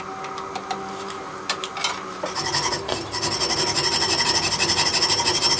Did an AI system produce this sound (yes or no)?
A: no